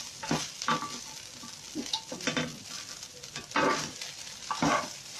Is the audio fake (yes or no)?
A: no